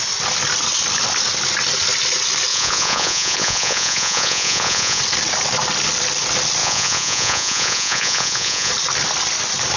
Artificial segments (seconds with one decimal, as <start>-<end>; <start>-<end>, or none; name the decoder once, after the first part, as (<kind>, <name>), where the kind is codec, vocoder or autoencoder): 2.5-5.0 (vocoder, Vocos); 6.6-8.7